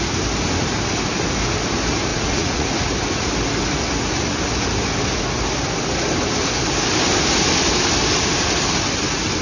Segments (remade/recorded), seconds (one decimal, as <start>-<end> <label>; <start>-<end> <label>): 0.0-2.1 recorded; 2.1-2.7 remade; 2.7-9.4 recorded